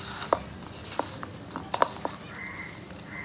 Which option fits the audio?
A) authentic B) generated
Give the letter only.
A